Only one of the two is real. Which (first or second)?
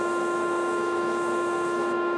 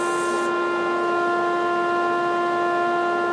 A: second